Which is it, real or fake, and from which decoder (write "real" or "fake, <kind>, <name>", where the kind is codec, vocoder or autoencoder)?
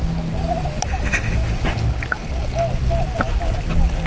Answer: real